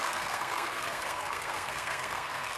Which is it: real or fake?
fake